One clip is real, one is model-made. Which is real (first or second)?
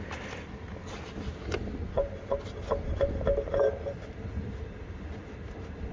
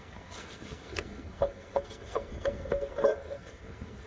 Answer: first